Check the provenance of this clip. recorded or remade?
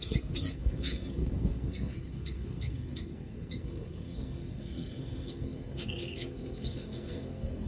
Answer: remade